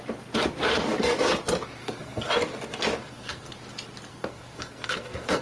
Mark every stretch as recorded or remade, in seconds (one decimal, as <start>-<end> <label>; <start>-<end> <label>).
0.0-1.8 recorded; 1.8-2.3 remade; 2.3-3.0 recorded; 3.0-3.5 remade; 3.5-4.1 recorded; 4.1-5.4 remade

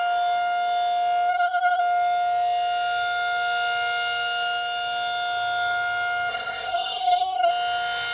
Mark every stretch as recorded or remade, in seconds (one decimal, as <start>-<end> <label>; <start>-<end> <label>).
0.0-1.3 recorded; 1.3-1.8 remade; 1.8-6.3 recorded; 6.3-7.5 remade; 7.5-8.1 recorded

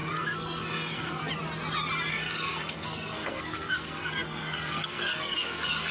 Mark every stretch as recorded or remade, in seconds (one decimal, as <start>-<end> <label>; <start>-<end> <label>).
0.0-1.3 remade; 1.3-2.1 recorded; 2.1-5.9 remade